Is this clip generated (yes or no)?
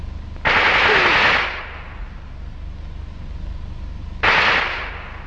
no